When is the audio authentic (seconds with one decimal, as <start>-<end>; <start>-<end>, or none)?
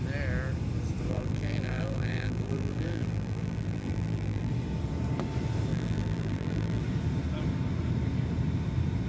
0.0-1.1; 4.5-5.7; 6.8-9.1